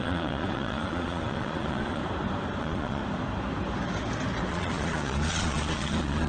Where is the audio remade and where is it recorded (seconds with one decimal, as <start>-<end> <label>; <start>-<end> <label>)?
0.0-2.0 remade; 2.0-2.6 recorded; 2.6-3.0 remade; 3.0-4.5 recorded; 4.5-6.3 remade

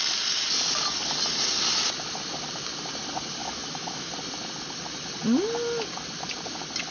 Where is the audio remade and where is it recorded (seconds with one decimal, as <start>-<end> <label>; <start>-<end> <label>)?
0.0-3.4 recorded; 3.4-4.1 remade; 4.1-6.9 recorded